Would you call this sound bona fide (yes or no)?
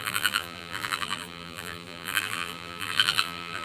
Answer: no